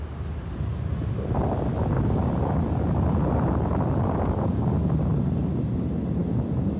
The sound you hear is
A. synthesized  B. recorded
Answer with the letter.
B